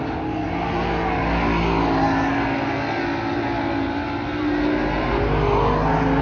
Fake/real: real